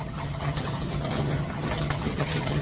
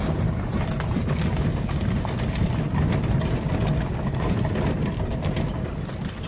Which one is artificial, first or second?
first